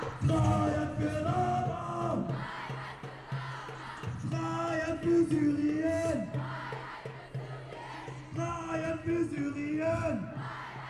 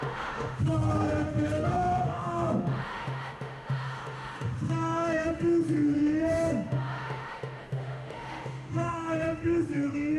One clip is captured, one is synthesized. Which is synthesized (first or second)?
second